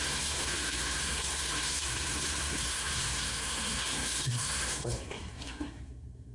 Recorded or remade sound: remade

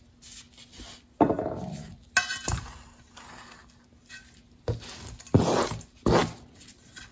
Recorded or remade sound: recorded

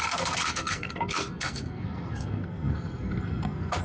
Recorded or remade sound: remade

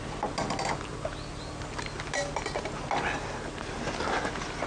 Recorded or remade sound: recorded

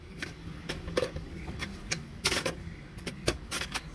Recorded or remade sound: remade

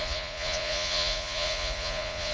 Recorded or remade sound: remade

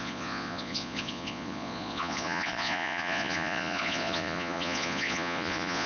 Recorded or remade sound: remade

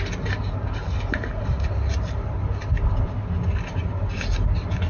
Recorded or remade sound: recorded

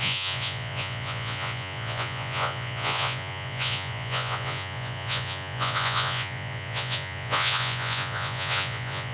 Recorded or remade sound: remade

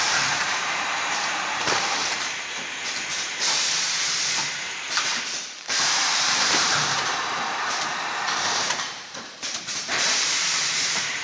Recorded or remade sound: remade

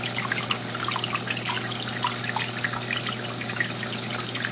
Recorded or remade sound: recorded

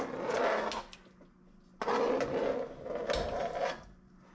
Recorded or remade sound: recorded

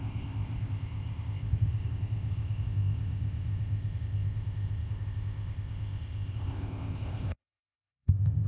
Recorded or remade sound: remade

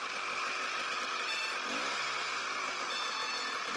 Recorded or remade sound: recorded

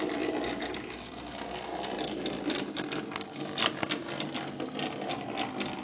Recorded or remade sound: recorded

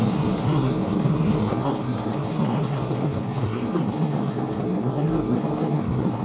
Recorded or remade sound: remade